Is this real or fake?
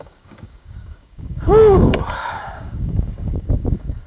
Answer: fake